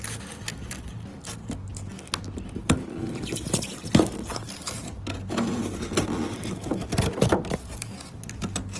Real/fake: real